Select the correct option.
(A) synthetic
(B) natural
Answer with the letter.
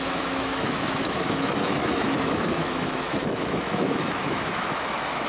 A